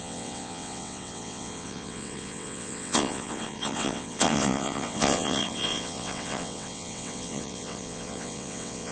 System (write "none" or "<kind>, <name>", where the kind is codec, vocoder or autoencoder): vocoder, WaveNeXt